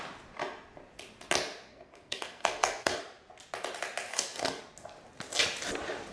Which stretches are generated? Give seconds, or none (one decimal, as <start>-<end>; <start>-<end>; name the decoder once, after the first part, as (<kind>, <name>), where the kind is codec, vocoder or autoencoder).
1.7-3.0 (codec, SNAC); 4.1-4.6